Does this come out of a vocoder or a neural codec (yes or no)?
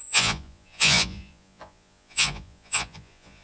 yes